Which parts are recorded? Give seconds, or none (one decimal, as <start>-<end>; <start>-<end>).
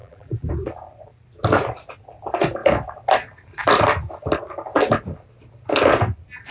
0.5-6.5